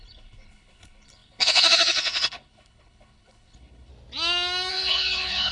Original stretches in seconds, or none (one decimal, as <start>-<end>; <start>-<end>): 3.9-4.7